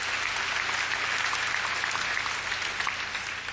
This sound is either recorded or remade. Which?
recorded